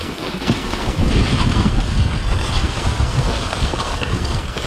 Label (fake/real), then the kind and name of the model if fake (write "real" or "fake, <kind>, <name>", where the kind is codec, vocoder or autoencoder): fake, codec, SNAC